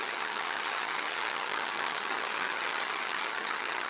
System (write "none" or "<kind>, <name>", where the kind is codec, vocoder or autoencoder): vocoder, HiFi-GAN